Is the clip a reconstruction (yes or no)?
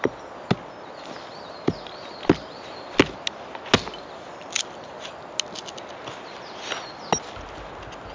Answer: no